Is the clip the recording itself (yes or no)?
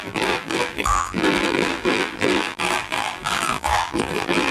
no